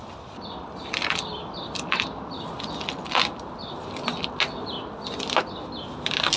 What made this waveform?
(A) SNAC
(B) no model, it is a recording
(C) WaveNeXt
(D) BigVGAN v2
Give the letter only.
B